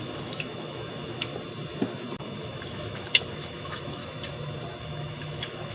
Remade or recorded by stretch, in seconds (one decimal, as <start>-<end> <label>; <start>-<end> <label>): 0.0-1.3 remade; 1.3-2.2 recorded; 2.2-4.0 remade; 4.0-4.8 recorded; 4.8-5.7 remade